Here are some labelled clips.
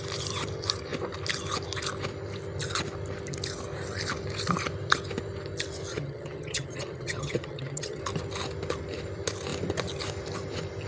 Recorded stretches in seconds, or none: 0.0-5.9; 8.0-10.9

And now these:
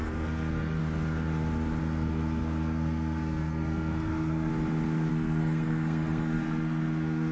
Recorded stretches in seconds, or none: 0.8-1.8; 4.5-5.1

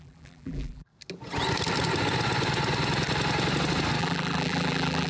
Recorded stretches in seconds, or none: 0.9-4.0

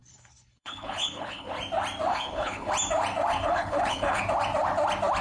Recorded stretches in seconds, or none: 1.5-2.1; 2.7-3.3; 4.2-5.2